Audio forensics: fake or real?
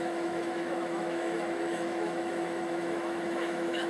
fake